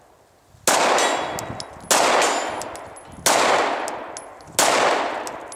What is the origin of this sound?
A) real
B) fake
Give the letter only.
A